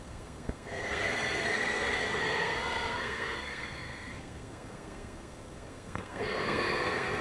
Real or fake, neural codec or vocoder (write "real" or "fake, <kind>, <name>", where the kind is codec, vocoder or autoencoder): fake, codec, SNAC